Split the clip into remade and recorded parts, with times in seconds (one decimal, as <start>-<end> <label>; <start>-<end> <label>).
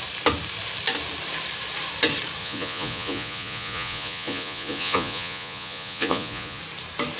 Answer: 0.0-2.4 recorded; 2.4-6.6 remade; 6.6-7.2 recorded